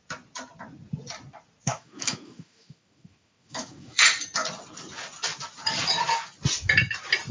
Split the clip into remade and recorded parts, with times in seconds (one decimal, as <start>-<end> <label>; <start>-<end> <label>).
0.0-1.7 recorded; 1.7-4.0 remade; 4.0-7.3 recorded